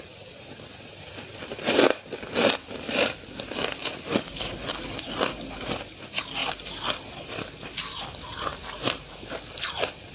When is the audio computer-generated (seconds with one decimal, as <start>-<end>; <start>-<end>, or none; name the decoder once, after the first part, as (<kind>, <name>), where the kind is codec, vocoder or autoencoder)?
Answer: 8.5-9.1 (vocoder, BigVGAN v2)